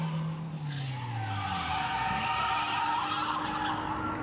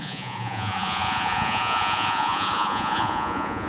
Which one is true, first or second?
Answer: first